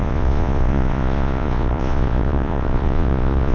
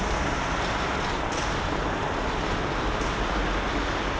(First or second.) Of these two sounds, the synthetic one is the first